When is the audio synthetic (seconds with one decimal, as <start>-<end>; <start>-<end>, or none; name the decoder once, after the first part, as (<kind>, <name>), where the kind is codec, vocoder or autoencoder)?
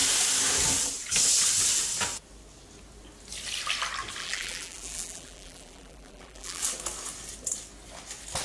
4.2-6.6 (vocoder, BigVGAN v2)